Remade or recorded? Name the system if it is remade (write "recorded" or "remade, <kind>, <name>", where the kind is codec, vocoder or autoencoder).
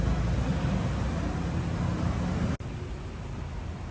recorded